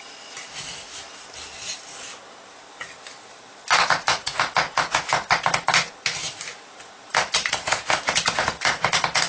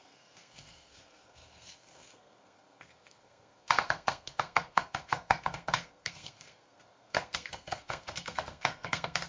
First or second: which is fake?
second